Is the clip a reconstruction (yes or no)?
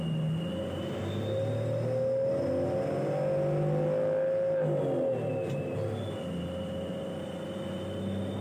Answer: no